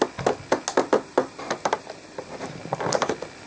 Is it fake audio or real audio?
real